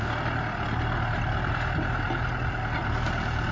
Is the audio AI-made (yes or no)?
no